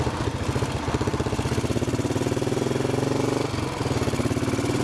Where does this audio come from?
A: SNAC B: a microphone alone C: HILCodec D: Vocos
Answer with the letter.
B